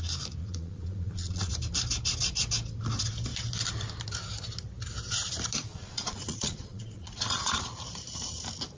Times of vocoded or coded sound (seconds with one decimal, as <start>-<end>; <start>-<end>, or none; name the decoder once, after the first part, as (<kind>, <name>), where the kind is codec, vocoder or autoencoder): 0.4-1.5 (vocoder, Vocos); 5.7-7.7